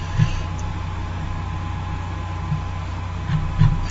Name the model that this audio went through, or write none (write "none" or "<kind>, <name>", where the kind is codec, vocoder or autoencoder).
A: none